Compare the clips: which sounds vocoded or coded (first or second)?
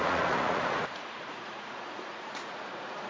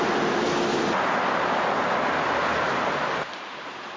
first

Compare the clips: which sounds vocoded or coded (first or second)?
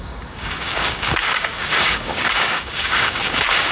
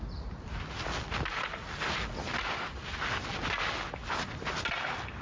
first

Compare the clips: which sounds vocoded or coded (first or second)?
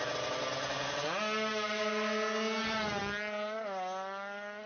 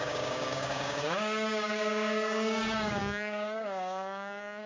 second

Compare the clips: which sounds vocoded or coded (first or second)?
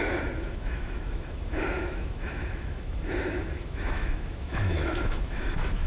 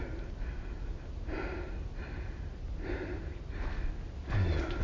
first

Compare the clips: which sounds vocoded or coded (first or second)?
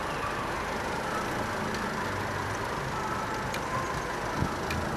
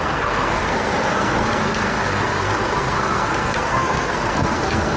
second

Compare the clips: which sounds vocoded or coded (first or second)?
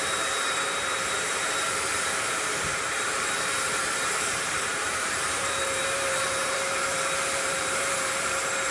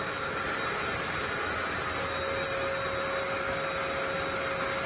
first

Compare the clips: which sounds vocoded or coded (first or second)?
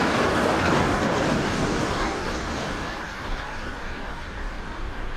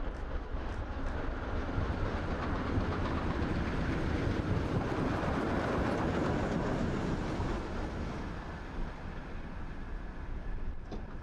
first